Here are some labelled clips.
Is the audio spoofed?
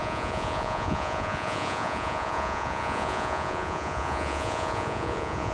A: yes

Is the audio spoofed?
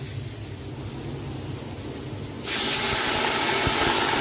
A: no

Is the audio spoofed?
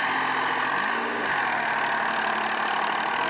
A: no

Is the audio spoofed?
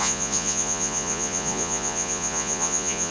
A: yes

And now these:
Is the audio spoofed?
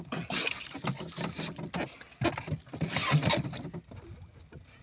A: no